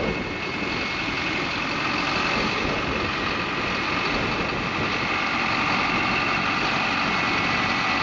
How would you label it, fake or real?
real